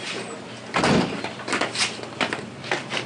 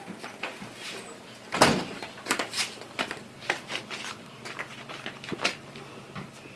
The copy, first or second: second